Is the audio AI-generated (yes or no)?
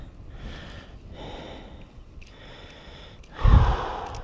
no